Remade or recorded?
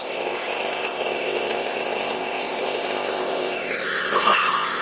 remade